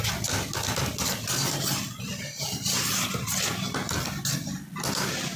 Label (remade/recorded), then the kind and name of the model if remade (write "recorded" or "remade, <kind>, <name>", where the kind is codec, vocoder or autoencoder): recorded